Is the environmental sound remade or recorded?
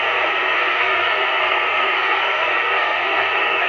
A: remade